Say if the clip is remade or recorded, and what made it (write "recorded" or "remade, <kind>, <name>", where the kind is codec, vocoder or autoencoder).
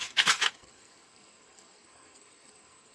remade, codec, SNAC